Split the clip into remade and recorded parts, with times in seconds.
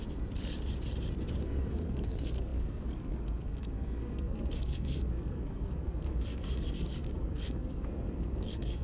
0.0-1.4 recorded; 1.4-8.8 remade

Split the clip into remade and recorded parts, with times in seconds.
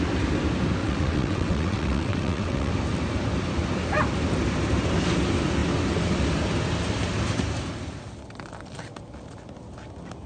0.0-0.8 recorded; 0.8-2.7 remade; 2.7-10.3 recorded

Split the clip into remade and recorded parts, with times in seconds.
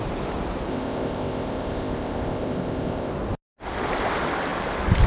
0.0-0.7 recorded; 0.7-3.1 remade; 3.1-5.1 recorded